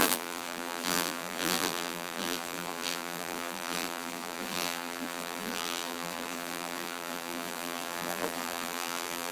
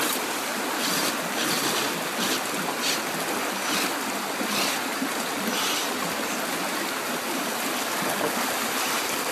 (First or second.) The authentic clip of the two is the second